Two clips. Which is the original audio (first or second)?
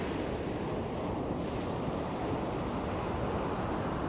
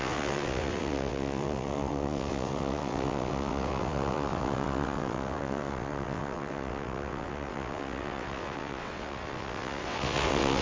first